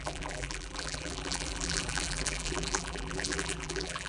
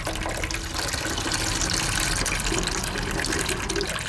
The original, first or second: second